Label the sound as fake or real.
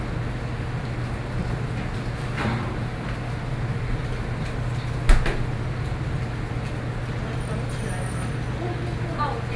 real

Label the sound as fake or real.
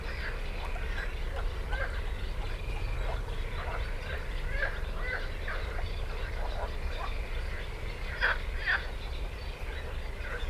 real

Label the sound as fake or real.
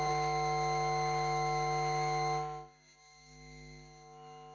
fake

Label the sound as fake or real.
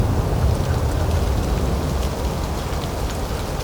real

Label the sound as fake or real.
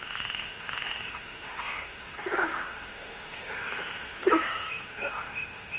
fake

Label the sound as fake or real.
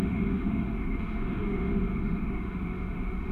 fake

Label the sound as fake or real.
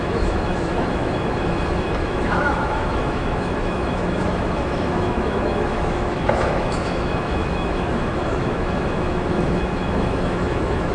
fake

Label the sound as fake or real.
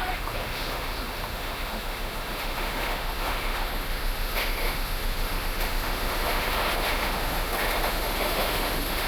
fake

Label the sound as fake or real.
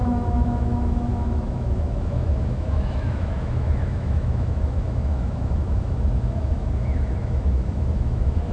fake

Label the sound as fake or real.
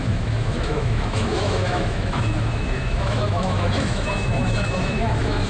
fake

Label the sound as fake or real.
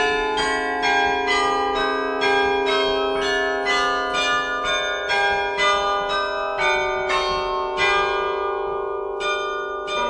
real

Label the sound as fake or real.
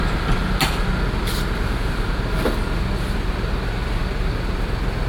real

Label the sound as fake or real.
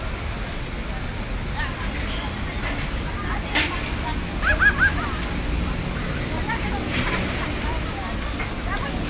real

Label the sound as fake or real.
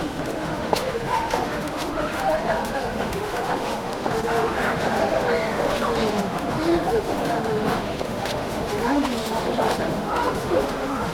fake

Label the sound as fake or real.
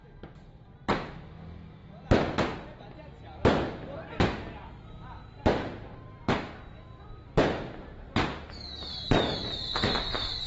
real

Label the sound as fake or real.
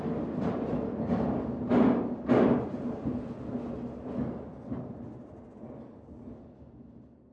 real